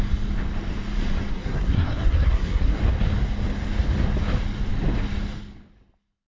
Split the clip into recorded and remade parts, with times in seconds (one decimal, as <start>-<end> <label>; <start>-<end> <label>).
0.0-1.3 recorded; 1.3-2.8 remade; 2.8-6.3 recorded